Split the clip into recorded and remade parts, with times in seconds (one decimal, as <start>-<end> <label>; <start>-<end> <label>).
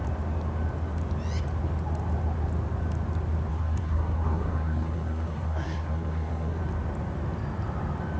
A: 0.0-3.5 recorded; 3.5-6.6 remade; 6.6-8.2 recorded